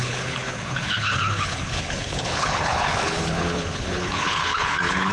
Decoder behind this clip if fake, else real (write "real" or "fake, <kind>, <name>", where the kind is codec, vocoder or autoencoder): fake, codec, HILCodec